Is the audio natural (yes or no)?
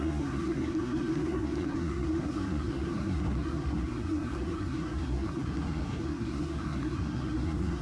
no